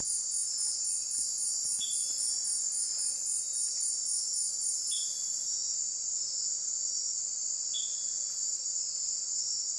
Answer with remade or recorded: recorded